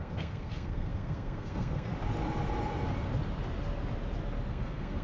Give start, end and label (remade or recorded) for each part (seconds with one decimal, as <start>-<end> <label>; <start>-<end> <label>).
0.0-1.9 remade; 1.9-4.5 recorded; 4.5-5.0 remade